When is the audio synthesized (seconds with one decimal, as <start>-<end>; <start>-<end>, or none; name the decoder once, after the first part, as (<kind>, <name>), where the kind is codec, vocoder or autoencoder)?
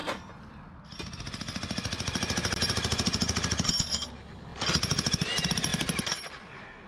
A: none